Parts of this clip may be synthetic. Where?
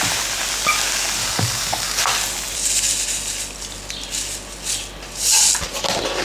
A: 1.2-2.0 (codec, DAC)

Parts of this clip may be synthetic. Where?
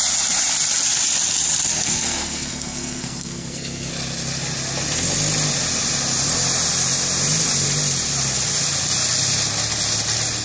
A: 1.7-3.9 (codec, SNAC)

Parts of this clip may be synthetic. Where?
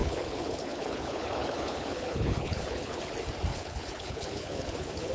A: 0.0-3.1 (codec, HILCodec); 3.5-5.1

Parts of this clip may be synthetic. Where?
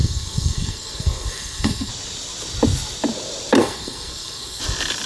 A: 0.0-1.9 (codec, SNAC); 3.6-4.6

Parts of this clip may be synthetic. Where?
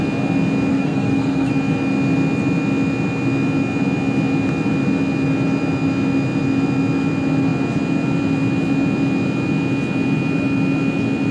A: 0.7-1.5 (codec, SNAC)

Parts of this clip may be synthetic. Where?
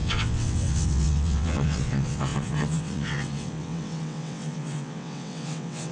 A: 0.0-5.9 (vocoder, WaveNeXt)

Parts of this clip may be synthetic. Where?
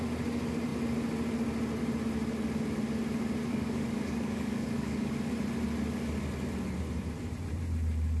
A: 3.5-5.1 (codec, DAC)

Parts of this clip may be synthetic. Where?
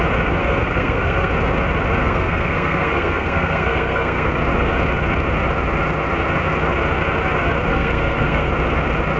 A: 0.4-1.3 (codec, SNAC); 2.0-4.3; 7.7-8.5